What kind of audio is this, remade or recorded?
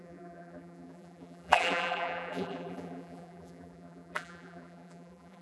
remade